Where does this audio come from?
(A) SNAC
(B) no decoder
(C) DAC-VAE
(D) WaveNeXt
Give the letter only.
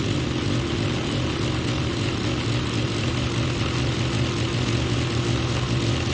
B